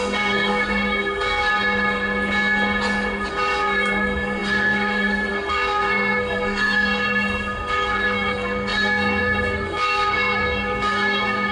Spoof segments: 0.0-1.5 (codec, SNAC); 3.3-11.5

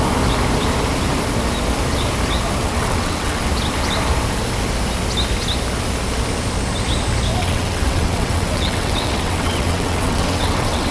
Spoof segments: 2.6-3.4 (vocoder, WaveNeXt); 7.4-10.9

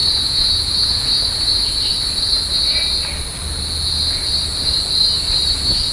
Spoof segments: 0.0-1.1 (vocoder, Vocos)

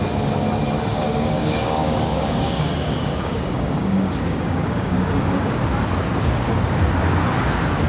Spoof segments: 0.9-5.6 (codec, DAC)